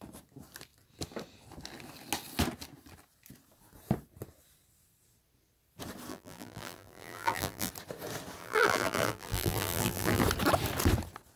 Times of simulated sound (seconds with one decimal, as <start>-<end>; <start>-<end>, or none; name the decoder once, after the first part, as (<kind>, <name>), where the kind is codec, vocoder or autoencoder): 6.1-7.7 (vocoder, BigVGAN v2); 8.4-10.2